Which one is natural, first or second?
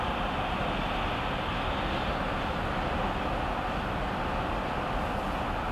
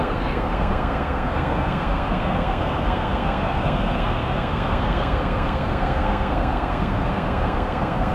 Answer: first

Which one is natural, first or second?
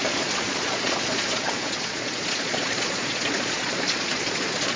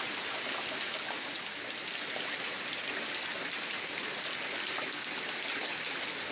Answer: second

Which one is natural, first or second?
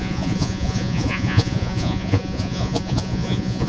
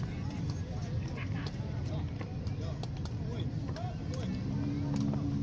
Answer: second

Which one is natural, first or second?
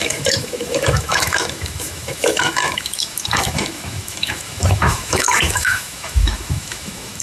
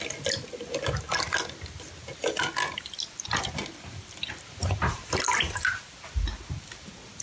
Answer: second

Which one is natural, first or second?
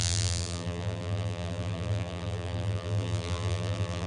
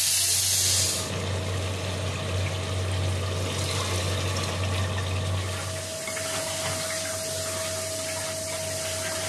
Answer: second